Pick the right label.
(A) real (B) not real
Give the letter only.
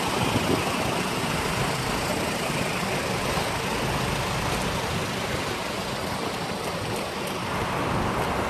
A